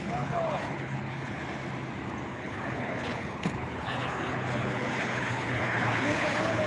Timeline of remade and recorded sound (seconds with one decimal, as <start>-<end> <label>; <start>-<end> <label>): 0.0-1.4 remade; 1.4-2.3 recorded; 2.3-6.7 remade